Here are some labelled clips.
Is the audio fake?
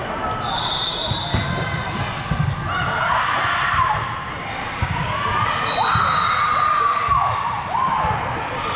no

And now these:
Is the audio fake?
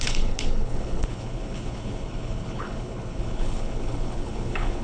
yes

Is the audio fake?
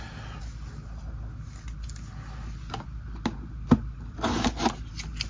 no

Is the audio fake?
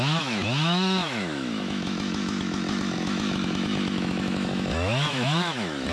yes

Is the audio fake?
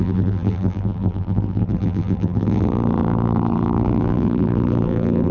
yes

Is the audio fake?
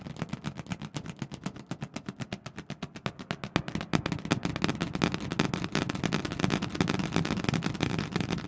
no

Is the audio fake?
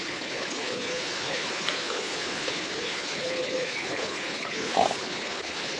yes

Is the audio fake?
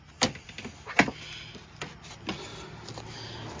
no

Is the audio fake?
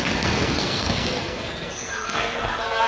yes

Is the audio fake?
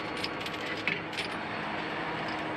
no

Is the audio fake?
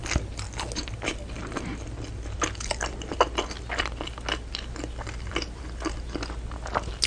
no